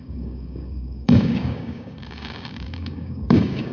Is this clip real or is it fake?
fake